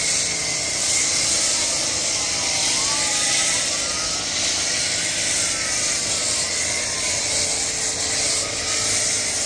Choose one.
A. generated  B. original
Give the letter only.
B